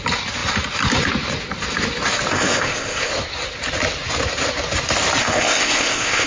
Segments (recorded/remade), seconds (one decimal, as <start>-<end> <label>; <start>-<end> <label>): 0.0-2.3 recorded; 2.3-3.1 remade; 3.1-5.2 recorded; 5.2-6.3 remade